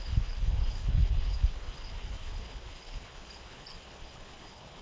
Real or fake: fake